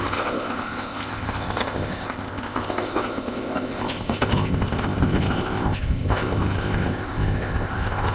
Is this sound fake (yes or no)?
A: yes